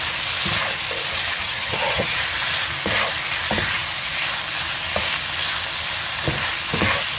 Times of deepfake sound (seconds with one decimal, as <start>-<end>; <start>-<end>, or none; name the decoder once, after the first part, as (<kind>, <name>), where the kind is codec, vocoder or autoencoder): 1.4-2.2 (vocoder, HiFi-GAN)